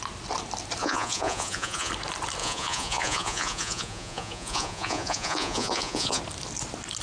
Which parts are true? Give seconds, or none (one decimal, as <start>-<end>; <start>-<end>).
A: 0.0-0.8; 1.9-2.4; 6.2-7.0